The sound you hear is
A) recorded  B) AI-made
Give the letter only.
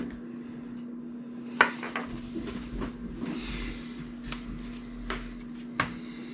A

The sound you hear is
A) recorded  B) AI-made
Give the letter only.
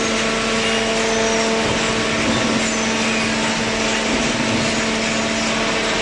A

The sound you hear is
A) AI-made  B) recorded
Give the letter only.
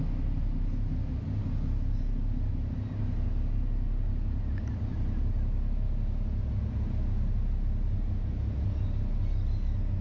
B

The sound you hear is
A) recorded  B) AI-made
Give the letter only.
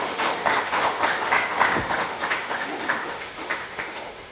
B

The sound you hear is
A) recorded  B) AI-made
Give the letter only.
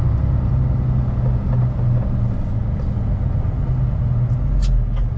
A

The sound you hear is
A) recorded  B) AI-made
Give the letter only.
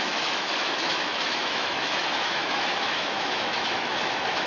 B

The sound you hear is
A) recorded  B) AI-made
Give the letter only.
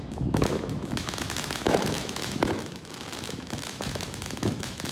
B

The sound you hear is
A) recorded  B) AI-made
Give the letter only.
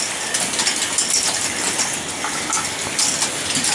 A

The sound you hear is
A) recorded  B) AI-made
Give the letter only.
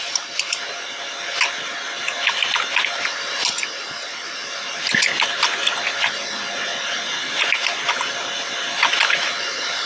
A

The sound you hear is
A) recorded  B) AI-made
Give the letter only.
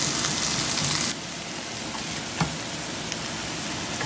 A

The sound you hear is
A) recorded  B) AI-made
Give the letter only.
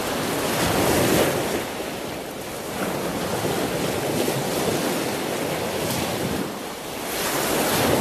A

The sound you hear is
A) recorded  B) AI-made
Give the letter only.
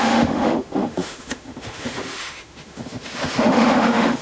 B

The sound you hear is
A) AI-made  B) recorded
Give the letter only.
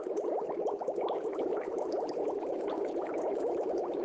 A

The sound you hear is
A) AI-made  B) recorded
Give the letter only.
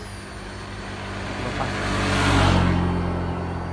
B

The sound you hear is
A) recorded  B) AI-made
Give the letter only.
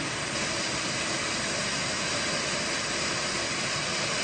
A